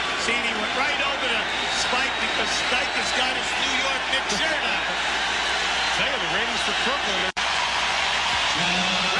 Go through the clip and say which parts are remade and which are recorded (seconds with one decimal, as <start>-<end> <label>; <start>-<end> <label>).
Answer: 0.0-7.2 recorded; 7.2-9.2 remade